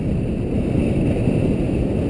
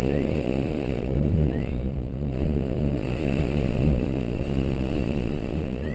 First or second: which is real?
first